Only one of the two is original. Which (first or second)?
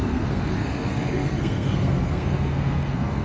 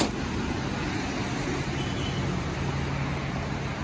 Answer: second